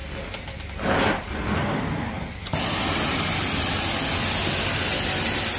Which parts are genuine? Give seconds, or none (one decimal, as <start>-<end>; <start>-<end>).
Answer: 0.0-5.6